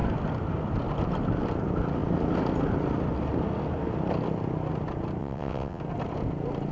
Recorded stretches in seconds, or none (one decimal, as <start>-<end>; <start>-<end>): 0.0-5.2; 5.8-6.7